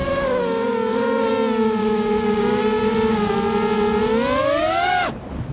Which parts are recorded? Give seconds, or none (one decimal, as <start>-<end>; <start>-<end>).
1.3-1.8; 3.3-4.4; 5.1-5.5